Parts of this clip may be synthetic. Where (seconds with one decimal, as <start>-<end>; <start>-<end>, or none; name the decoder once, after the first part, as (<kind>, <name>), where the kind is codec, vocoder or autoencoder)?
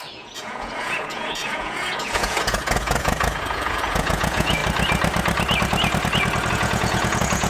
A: 0.0-4.6 (vocoder, Vocos); 6.5-7.5